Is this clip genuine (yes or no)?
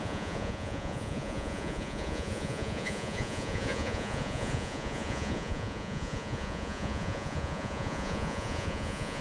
no